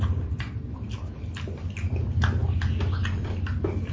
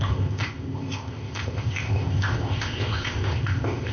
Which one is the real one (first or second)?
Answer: first